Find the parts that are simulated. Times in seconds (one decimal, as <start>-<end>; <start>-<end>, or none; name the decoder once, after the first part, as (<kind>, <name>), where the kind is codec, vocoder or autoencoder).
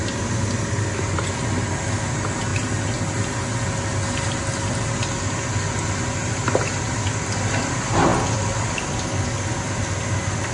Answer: none